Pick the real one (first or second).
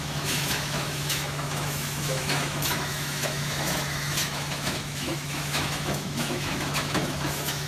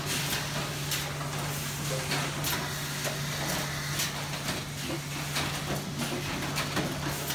second